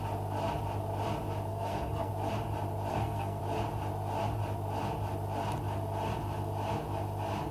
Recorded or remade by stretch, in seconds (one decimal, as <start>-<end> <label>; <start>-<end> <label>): 0.0-1.5 recorded; 1.5-2.1 remade; 2.1-2.9 recorded; 2.9-3.4 remade; 3.4-7.5 recorded